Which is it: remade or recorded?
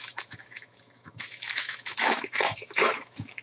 remade